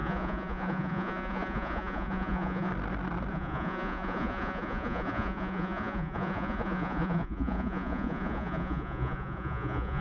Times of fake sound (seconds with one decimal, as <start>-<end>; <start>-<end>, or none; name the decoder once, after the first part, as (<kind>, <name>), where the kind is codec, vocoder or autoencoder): 0.0-2.7 (vocoder, Vocos); 3.3-10.0